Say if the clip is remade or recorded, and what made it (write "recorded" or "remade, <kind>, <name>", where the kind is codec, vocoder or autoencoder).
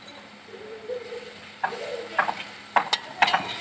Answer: recorded